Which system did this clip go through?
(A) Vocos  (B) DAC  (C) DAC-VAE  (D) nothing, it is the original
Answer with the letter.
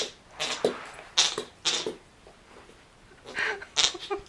D